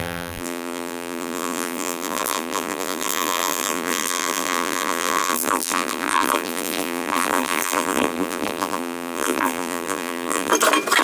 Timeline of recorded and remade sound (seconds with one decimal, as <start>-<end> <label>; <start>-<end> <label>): 0.0-10.5 remade; 10.5-11.0 recorded